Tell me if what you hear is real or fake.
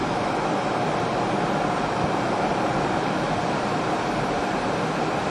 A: real